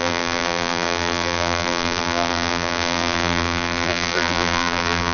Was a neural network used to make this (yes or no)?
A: yes